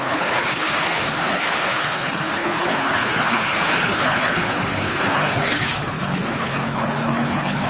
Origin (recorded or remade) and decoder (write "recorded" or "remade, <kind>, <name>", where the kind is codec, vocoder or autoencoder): remade, codec, HILCodec